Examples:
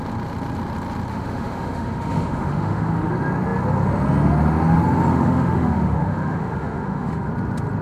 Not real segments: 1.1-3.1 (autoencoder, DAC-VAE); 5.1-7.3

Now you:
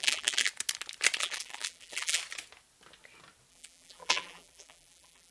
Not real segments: 0.0-0.5 (vocoder, BigVGAN v2); 1.2-2.2; 3.5-5.3

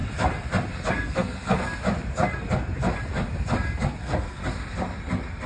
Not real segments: 0.9-1.6 (codec, SNAC); 4.0-4.4